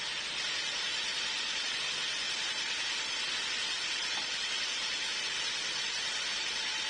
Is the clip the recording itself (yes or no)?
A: yes